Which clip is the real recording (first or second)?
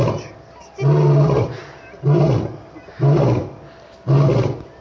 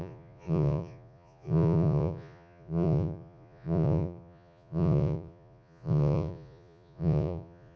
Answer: first